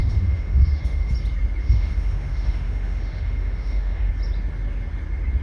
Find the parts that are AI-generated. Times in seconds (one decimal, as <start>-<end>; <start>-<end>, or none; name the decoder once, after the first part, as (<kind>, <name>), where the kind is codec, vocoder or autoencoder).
0.0-1.1 (autoencoder, DAC-VAE); 1.6-4.1